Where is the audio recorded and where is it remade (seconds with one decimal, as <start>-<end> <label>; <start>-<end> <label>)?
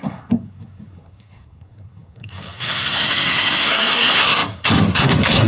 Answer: 0.0-5.5 remade